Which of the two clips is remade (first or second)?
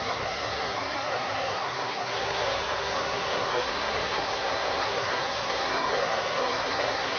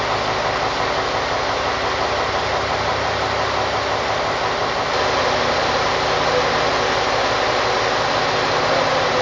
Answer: first